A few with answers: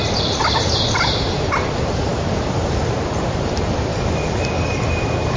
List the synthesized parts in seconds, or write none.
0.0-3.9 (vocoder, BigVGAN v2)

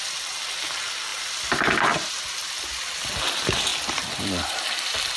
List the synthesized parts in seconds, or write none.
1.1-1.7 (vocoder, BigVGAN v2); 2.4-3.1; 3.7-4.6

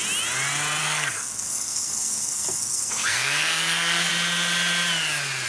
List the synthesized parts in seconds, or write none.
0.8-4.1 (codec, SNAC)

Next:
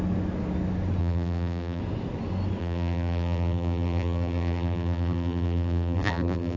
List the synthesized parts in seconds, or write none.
1.0-1.8 (vocoder, BigVGAN v2); 2.6-6.6

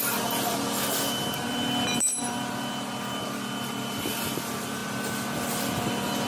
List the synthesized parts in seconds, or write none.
none